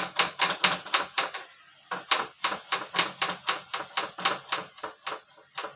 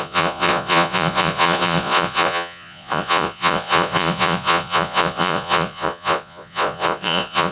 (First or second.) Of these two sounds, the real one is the first